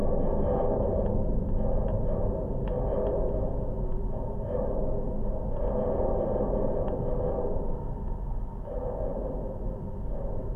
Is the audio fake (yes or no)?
no